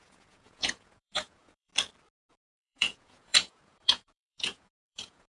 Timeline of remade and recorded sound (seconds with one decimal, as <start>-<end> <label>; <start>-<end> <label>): 0.0-1.7 remade; 1.7-2.3 recorded; 2.3-5.3 remade

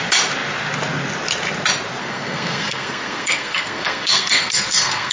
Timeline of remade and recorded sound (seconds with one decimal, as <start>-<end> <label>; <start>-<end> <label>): 0.0-2.0 recorded; 2.0-5.1 remade

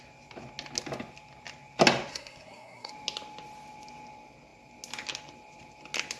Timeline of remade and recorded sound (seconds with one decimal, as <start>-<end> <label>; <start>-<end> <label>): 0.0-2.1 recorded; 2.1-2.9 remade; 2.9-6.2 recorded

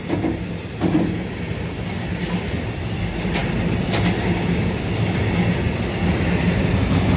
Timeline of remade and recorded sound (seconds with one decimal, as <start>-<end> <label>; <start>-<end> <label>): 0.0-7.2 recorded

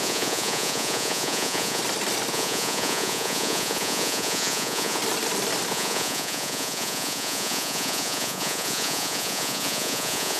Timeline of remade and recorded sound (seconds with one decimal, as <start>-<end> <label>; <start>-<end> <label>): 0.0-1.8 remade; 1.8-2.3 recorded; 2.3-5.0 remade; 5.0-5.7 recorded; 5.7-10.4 remade

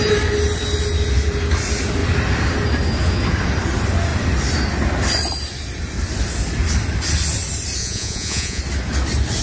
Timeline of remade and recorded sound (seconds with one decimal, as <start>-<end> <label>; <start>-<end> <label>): 0.0-7.8 recorded; 7.8-8.6 remade; 8.6-9.4 recorded